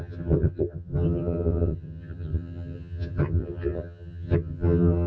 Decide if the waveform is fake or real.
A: fake